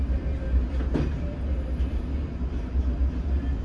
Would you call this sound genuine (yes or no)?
yes